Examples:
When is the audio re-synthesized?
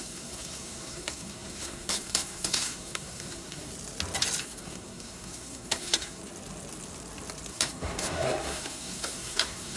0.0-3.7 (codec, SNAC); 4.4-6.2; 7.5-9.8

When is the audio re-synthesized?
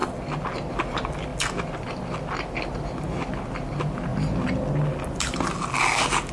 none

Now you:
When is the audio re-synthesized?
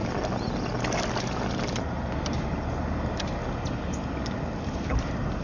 none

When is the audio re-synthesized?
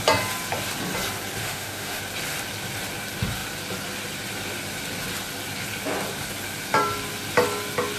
1.4-2.0 (autoencoder, DAC-VAE)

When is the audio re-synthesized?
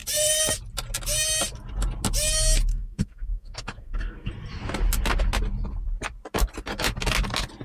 2.7-4.3 (codec, SNAC)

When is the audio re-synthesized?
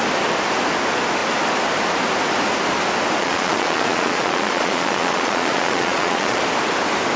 3.2-6.4 (vocoder, Vocos)